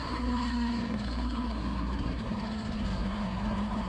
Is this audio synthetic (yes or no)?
yes